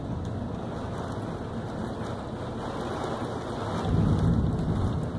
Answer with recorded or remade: recorded